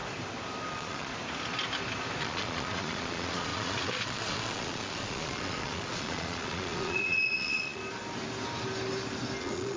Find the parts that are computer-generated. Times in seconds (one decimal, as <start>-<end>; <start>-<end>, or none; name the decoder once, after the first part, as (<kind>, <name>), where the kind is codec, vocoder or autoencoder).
0.7-1.1 (vocoder, Vocos); 2.2-7.8; 9.4-9.8